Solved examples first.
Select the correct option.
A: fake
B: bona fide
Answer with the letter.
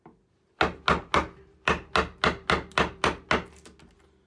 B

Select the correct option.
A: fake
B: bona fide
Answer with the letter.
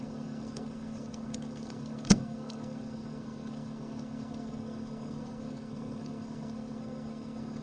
A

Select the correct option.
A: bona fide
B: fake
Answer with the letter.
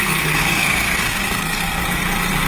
B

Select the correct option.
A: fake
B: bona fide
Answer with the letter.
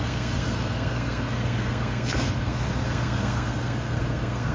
A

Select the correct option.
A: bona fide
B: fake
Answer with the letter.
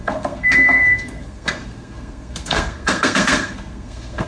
B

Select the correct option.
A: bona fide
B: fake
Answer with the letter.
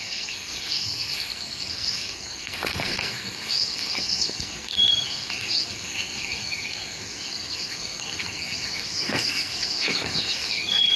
B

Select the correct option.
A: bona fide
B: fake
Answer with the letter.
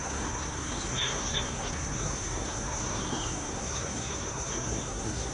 B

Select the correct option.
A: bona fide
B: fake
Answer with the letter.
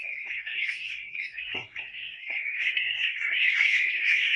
B